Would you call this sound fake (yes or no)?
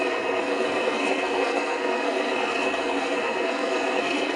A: yes